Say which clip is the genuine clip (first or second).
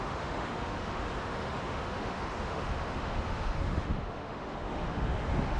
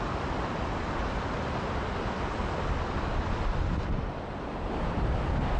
second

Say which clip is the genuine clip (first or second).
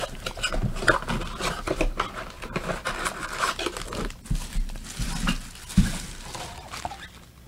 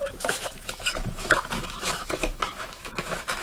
first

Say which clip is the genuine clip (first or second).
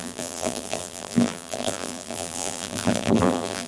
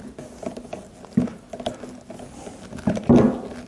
second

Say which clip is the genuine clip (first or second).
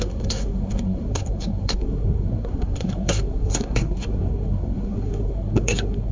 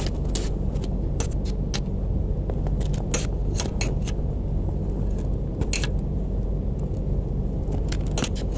second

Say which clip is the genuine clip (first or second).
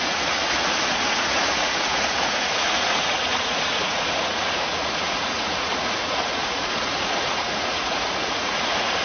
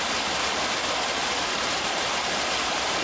second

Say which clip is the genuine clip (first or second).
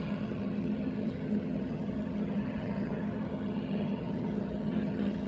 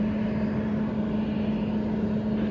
second